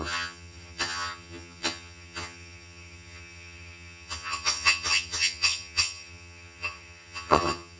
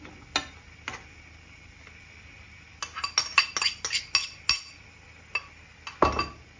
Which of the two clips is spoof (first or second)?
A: first